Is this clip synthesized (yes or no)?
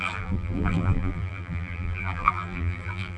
yes